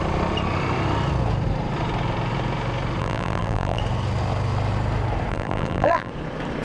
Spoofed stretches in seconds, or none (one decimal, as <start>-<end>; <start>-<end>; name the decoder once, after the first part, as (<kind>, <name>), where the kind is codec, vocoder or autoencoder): 3.0-3.8 (vocoder, BigVGAN v2); 5.3-6.1